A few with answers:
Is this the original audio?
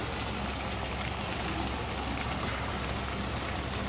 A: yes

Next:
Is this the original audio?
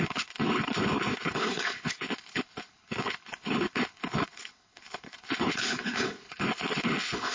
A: no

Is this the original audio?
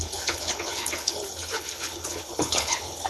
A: no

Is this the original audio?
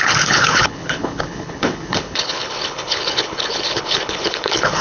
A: no